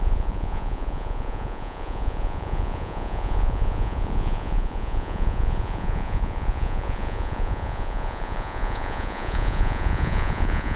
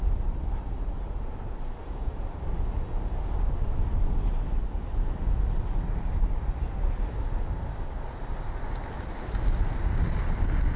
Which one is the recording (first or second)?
second